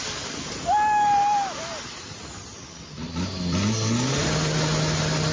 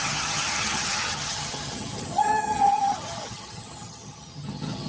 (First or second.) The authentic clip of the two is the first